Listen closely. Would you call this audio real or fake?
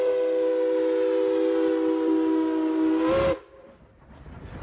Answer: real